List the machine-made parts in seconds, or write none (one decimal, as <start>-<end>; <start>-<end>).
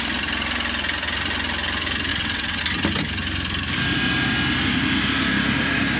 2.1-2.6